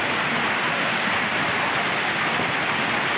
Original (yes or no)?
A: yes